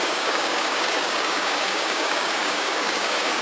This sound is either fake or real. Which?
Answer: fake